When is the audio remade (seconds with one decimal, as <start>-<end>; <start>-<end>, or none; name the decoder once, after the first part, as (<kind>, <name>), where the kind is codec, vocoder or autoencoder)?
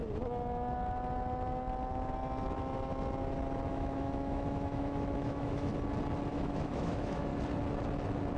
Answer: 3.7-5.7 (autoencoder, DAC-VAE); 6.3-7.3